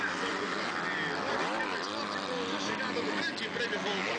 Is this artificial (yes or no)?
no